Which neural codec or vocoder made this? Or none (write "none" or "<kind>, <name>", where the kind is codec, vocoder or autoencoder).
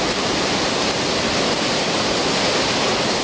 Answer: none